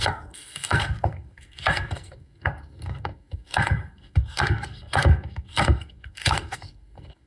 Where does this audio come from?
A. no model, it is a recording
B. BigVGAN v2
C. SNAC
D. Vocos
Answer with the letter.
C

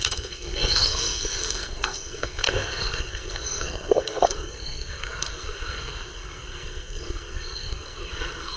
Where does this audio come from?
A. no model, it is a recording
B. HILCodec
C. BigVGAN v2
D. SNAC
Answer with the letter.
D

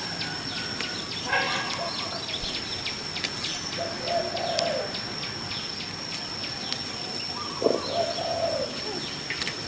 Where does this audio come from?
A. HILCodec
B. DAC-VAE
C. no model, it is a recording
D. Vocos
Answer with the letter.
C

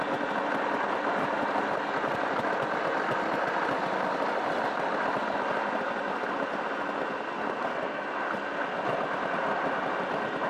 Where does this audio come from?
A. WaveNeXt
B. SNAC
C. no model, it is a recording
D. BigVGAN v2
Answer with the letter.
C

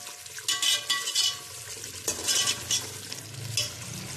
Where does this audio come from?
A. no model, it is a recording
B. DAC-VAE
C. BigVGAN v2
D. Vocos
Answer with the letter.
A